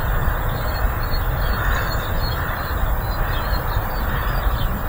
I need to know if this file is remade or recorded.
recorded